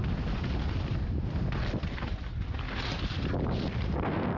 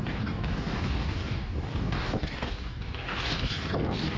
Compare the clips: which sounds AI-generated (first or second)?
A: second